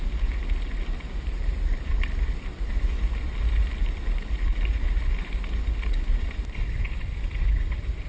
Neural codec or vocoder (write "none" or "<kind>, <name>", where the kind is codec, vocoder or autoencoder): none